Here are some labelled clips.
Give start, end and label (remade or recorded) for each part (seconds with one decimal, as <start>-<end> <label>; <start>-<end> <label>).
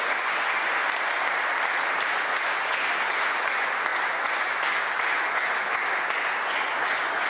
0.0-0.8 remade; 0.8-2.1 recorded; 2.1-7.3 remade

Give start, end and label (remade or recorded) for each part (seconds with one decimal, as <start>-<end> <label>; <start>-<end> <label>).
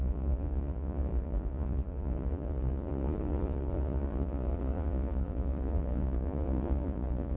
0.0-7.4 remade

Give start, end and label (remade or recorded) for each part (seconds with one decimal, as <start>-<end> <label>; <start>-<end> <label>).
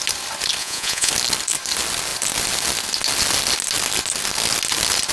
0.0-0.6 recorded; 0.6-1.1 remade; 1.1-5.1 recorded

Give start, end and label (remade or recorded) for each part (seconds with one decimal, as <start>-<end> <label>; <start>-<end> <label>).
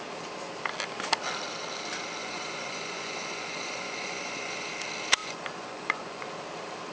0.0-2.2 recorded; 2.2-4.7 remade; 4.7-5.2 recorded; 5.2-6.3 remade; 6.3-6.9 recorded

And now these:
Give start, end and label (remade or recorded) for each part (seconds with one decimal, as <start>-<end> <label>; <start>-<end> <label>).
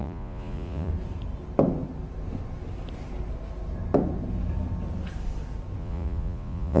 0.0-0.9 remade; 0.9-5.8 recorded; 5.8-6.8 remade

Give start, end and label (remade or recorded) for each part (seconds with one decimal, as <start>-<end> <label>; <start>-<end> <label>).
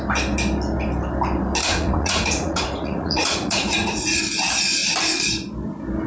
0.0-1.6 recorded; 1.6-4.2 remade; 4.2-6.1 recorded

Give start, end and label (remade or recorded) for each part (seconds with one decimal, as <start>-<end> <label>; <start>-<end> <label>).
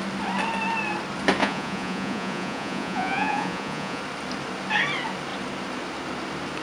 0.0-1.4 recorded; 1.4-4.0 remade; 4.0-6.6 recorded